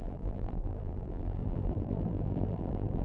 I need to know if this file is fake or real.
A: fake